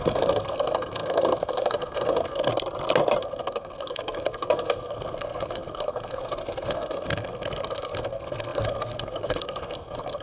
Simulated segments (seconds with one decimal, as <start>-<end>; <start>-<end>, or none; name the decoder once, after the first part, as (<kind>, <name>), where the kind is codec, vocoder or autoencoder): 0.0-2.5 (codec, SNAC); 3.2-10.2